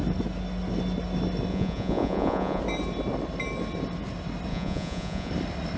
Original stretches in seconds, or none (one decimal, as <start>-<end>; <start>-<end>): 0.0-1.5; 2.6-4.5; 5.3-5.8